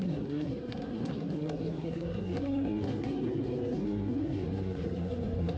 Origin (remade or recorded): remade